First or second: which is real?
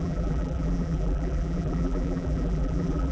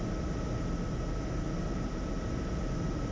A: second